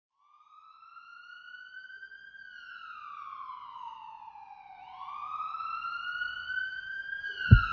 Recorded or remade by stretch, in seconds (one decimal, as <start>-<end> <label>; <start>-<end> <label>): 0.0-6.6 recorded; 6.6-7.2 remade; 7.2-7.7 recorded